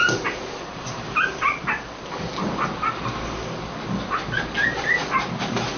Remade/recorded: recorded